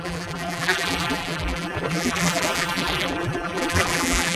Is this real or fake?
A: fake